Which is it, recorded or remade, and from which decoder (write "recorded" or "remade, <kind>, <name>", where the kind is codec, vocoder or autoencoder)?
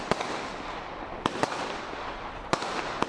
recorded